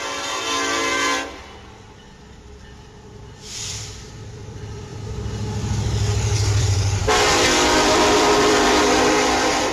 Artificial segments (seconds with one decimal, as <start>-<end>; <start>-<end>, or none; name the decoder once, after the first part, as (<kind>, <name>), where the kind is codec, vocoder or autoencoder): 0.0-4.9 (vocoder, BigVGAN v2); 6.6-9.7